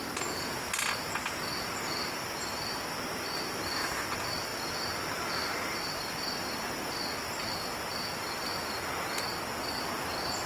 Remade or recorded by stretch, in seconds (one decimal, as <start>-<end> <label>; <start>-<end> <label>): 0.0-10.5 recorded